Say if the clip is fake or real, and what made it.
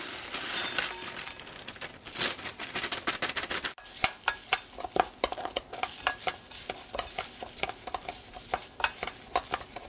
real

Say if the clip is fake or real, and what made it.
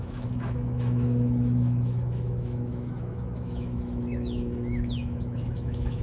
fake, autoencoder, DAC-VAE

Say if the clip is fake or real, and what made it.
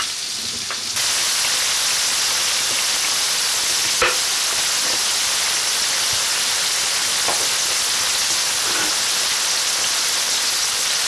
real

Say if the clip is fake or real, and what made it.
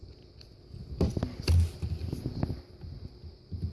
real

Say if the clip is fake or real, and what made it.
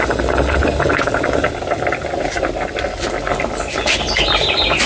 real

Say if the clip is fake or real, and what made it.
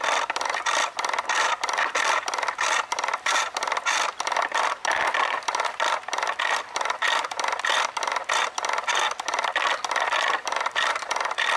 fake, vocoder, BigVGAN v2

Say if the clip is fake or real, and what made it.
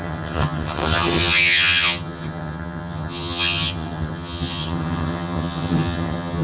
fake, vocoder, HiFi-GAN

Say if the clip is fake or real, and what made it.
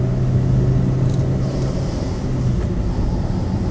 real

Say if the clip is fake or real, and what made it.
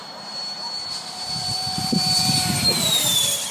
fake, vocoder, BigVGAN v2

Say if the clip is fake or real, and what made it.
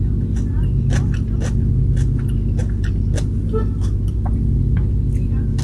real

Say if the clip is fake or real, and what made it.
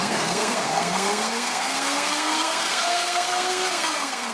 fake, codec, SNAC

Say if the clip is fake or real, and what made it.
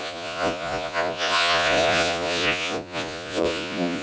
fake, vocoder, Vocos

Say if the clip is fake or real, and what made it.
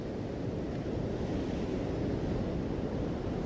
real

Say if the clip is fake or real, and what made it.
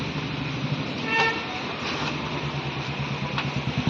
real